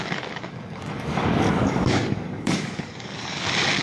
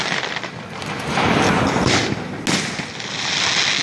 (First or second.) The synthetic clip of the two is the first